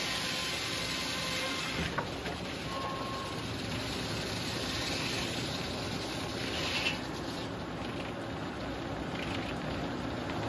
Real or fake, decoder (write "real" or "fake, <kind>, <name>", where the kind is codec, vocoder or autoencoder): real